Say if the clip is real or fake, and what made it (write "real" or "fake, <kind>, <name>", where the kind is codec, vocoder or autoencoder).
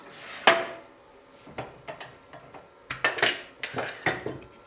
real